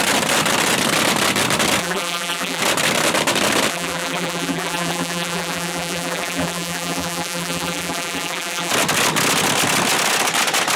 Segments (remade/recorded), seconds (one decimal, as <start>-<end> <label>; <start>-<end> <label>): 0.0-1.8 recorded; 1.8-2.6 remade; 2.6-3.7 recorded; 3.7-8.7 remade; 8.7-10.8 recorded

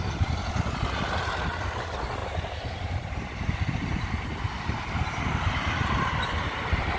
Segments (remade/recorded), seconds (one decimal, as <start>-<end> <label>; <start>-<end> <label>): 0.0-2.2 recorded; 2.2-2.8 remade; 2.8-7.0 recorded

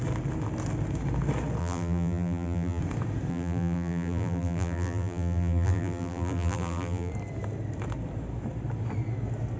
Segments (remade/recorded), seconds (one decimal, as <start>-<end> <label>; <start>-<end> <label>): 0.0-1.6 recorded; 1.6-2.8 remade; 2.8-3.3 recorded; 3.3-7.1 remade; 7.1-9.6 recorded

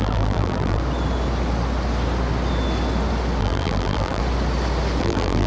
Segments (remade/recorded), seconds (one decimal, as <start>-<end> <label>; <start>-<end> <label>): 0.0-0.8 remade; 0.8-3.4 recorded; 3.4-4.2 remade; 4.2-5.0 recorded; 5.0-5.5 remade

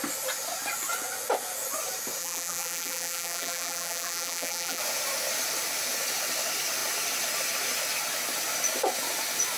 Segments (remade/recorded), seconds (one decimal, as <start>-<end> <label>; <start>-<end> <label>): 0.0-2.2 recorded; 2.2-4.8 remade; 4.8-9.6 recorded

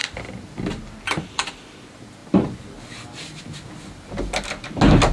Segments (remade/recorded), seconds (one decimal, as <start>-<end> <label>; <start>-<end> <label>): 0.0-1.8 remade; 1.8-5.1 recorded